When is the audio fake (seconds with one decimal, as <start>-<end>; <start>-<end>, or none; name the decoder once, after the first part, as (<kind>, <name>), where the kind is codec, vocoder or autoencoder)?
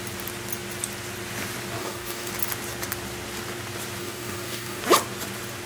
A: 1.8-2.3 (codec, DAC); 4.0-4.8